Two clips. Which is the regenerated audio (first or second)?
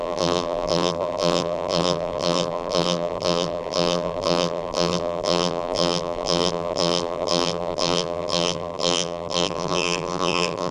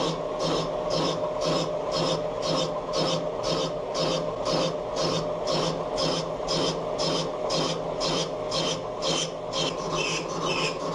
first